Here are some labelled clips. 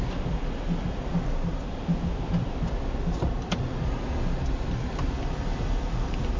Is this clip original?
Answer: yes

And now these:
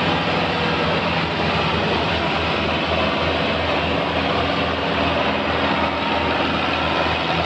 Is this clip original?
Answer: yes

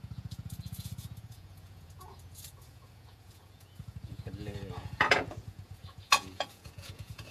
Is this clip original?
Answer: no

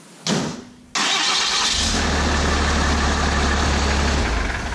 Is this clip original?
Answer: yes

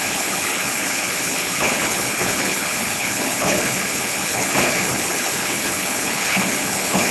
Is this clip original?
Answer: no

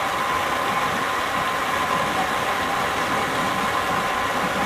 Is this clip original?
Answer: yes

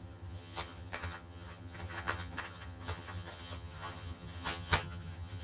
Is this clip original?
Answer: no